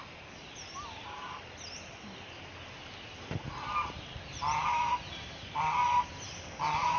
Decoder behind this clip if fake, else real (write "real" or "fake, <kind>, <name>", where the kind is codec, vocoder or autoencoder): real